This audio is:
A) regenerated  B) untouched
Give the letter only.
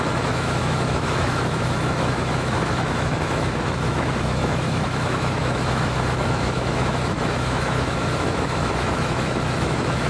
A